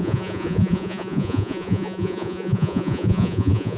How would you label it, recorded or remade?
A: remade